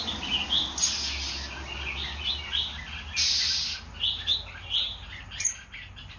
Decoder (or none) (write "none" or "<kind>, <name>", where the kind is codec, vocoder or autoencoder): none